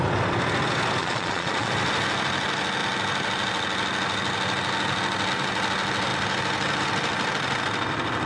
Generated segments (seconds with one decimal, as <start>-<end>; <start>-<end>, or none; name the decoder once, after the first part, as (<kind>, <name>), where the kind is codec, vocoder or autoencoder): 1.0-1.7 (vocoder, Vocos)